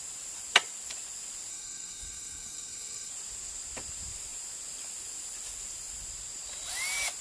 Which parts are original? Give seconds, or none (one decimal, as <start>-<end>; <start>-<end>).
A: 0.0-1.5; 3.1-7.2